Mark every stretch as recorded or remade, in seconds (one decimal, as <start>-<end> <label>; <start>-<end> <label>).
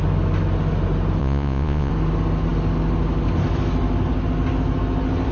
0.0-1.2 recorded; 1.2-1.9 remade; 1.9-5.3 recorded